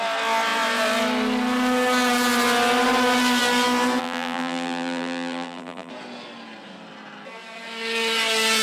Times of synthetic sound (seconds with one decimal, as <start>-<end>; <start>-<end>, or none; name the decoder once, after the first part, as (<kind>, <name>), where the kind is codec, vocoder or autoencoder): 4.0-5.9 (vocoder, BigVGAN v2)